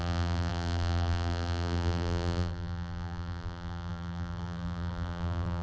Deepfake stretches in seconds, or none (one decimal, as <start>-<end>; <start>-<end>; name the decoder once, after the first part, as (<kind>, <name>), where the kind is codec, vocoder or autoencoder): 0.0-5.6 (vocoder, BigVGAN v2)